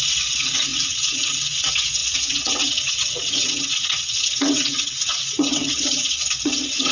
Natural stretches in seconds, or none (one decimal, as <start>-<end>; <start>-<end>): none